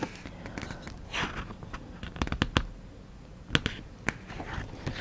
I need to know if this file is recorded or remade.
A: recorded